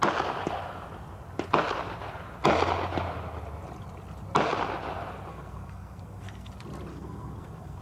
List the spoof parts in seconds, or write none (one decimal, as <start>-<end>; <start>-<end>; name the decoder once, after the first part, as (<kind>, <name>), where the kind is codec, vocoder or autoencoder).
5.3-6.5 (codec, SNAC); 6.9-7.8